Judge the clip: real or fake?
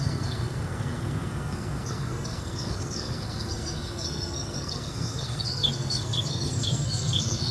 fake